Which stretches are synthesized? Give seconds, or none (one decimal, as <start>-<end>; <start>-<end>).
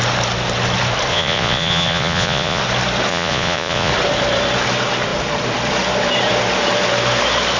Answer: 1.1-2.6; 3.1-3.9